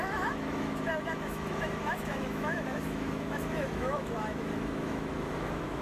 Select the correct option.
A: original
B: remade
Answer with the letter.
B